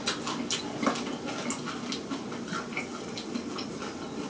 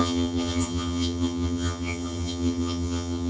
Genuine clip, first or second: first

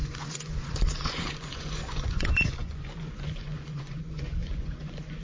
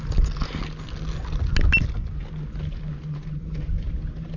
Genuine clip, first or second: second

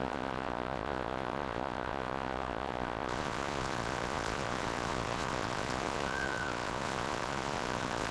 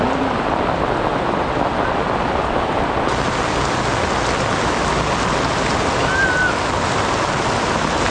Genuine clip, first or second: second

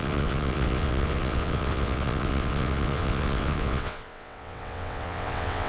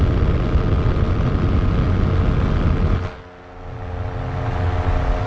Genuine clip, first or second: second